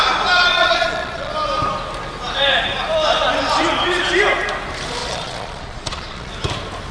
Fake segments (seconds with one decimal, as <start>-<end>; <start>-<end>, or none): 0.5-1.3; 5.0-6.3